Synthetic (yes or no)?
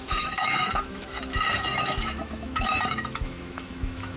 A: yes